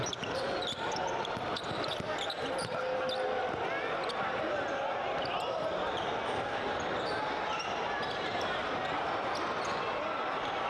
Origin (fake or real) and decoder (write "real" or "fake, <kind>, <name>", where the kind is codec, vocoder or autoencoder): real